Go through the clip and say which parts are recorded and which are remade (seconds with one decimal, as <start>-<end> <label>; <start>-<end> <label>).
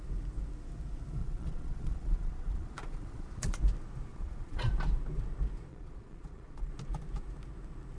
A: 0.0-1.2 recorded; 1.2-3.6 remade; 3.6-4.1 recorded; 4.1-4.7 remade; 4.7-5.7 recorded; 5.7-6.7 remade; 6.7-8.0 recorded